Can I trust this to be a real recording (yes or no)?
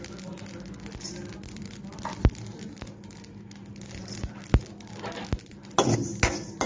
yes